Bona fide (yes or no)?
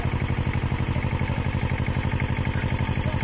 yes